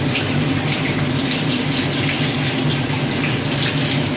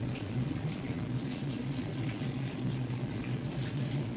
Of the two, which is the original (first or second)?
first